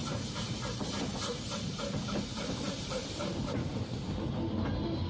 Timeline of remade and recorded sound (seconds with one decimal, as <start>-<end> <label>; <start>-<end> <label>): 0.0-0.9 remade; 0.9-1.3 recorded; 1.3-3.3 remade; 3.3-5.1 recorded